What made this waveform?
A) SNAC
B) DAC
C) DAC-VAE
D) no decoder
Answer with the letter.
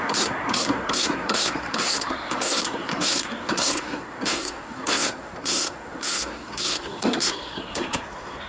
A